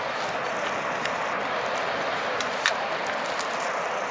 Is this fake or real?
real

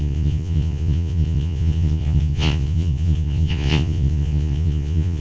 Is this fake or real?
fake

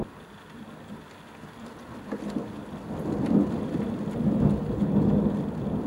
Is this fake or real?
real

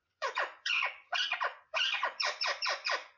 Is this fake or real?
fake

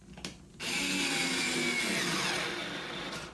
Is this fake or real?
real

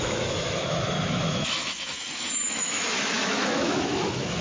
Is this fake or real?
fake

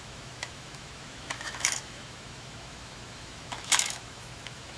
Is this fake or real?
fake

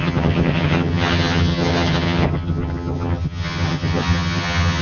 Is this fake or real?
fake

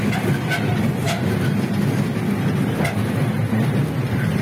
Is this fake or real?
real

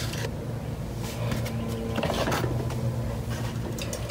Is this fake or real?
real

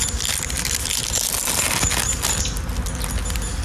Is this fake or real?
real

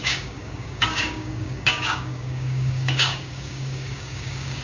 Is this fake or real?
fake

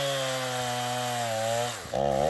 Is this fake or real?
real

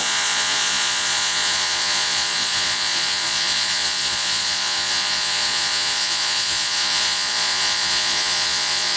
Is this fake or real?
fake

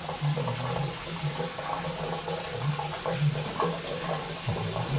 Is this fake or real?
real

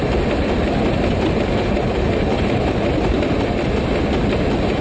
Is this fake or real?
real